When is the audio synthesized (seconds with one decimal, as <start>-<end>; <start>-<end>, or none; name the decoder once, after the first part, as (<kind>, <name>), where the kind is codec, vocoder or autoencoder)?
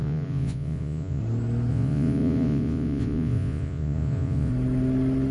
0.0-1.2 (vocoder, Vocos); 1.7-4.5